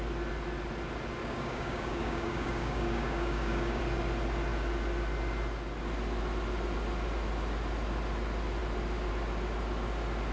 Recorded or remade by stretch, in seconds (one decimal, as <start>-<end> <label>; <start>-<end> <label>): 0.0-1.2 recorded; 1.2-3.8 remade; 3.8-10.3 recorded